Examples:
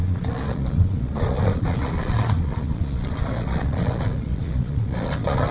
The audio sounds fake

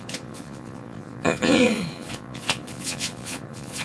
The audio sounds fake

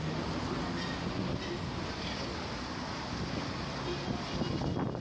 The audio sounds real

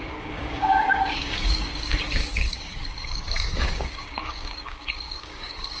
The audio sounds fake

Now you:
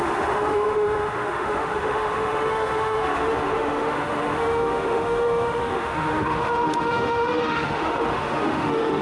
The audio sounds fake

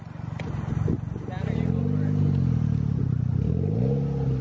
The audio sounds real